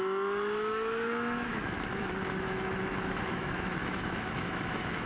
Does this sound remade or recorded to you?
remade